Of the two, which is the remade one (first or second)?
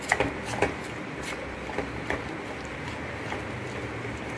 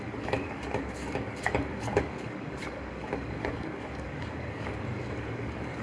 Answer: second